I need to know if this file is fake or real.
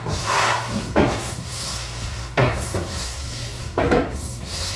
fake